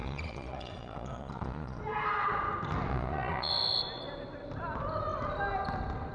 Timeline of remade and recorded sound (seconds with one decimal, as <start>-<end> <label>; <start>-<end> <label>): 0.0-1.8 remade; 1.8-2.9 recorded; 2.9-3.5 remade; 3.5-6.1 recorded